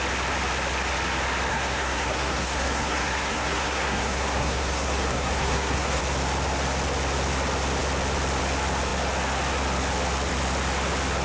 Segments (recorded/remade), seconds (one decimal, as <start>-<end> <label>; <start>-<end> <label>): 0.0-1.5 recorded; 1.5-6.0 remade; 6.0-11.2 recorded